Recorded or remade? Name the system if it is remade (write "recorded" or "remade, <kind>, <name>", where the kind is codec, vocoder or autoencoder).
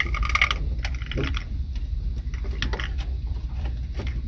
recorded